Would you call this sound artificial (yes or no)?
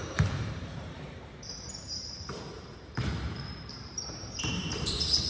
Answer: yes